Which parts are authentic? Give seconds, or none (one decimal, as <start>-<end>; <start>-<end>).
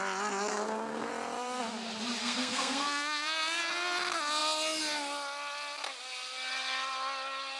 0.0-0.5; 1.1-2.2; 3.6-7.6